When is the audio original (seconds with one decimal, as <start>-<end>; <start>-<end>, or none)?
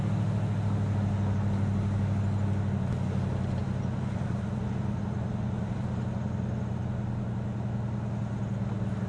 0.0-3.6; 5.9-9.1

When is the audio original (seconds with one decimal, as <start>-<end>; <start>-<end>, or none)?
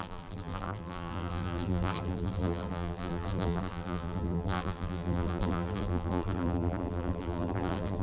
none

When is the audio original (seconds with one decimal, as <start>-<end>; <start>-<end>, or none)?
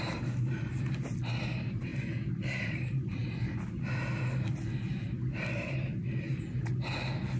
3.2-4.9; 5.9-7.4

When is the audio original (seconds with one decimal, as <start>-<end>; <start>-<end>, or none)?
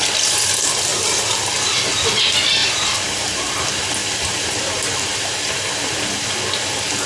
0.0-0.9; 1.5-2.6; 3.6-4.0; 6.3-7.1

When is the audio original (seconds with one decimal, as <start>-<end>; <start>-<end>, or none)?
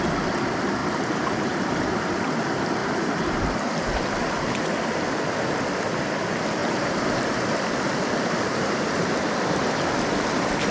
0.0-0.8; 2.2-2.8; 3.7-6.6; 7.3-10.7